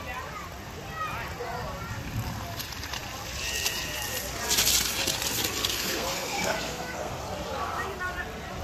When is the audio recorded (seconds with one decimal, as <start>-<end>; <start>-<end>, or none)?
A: 0.0-5.6; 7.1-8.6